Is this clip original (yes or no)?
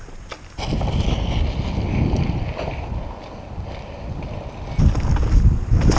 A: yes